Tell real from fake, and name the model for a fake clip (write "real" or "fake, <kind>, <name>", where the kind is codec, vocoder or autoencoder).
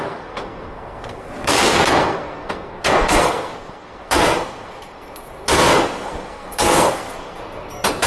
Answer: fake, codec, SNAC